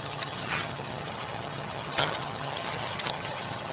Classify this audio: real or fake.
fake